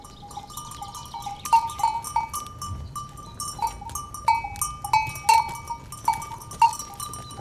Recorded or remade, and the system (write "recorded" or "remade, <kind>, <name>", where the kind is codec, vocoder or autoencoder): recorded